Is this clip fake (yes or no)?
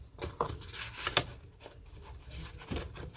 no